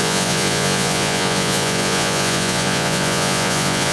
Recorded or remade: remade